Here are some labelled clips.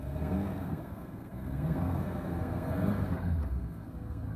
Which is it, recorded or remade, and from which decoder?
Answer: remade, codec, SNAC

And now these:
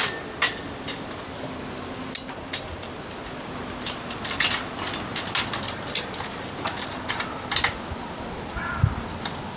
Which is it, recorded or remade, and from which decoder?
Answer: recorded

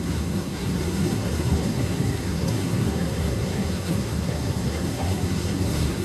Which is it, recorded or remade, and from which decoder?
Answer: remade, codec, SNAC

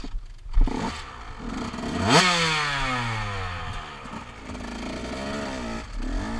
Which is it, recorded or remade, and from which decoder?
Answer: recorded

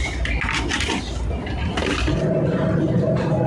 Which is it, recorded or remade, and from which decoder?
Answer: recorded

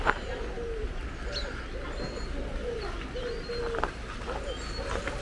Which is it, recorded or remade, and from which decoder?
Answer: recorded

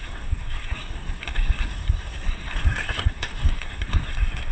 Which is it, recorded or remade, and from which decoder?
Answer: remade, codec, SNAC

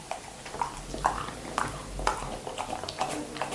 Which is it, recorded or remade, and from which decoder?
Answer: recorded